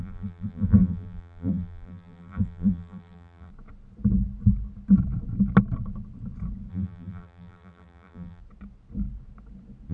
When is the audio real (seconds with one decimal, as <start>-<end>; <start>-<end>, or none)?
3.5-6.7; 8.4-9.9